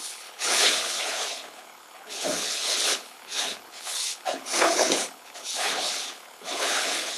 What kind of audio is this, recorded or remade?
remade